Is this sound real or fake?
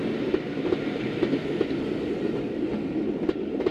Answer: real